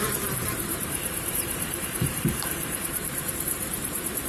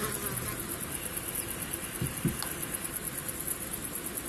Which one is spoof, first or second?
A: first